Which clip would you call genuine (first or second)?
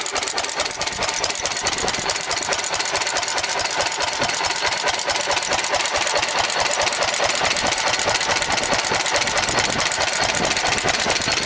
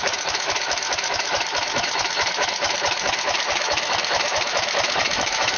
first